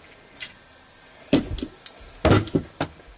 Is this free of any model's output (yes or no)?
yes